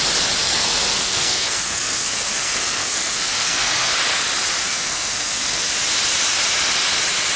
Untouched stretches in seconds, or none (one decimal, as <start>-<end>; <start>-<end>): 0.0-0.4; 3.9-4.6; 5.7-7.4